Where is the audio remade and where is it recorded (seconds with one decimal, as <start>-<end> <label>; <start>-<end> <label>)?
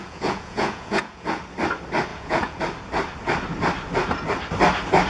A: 0.0-1.4 remade; 1.4-2.1 recorded; 2.1-2.6 remade; 2.6-5.1 recorded